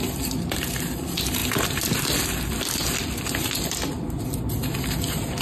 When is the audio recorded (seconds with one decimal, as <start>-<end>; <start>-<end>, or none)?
0.0-5.4